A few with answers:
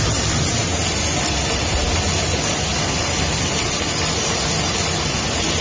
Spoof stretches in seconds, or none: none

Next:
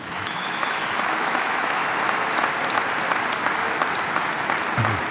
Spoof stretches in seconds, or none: 0.0-1.8 (autoencoder, DAC-VAE)